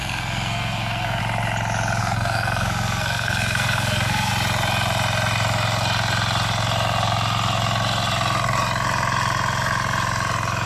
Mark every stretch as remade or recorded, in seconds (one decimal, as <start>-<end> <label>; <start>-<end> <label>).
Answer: 0.0-1.2 remade; 1.2-2.0 recorded; 2.0-4.3 remade; 4.3-10.7 recorded